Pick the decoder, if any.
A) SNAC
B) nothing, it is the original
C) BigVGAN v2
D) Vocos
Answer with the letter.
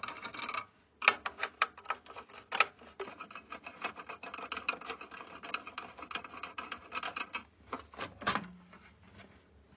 B